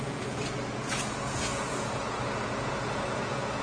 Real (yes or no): no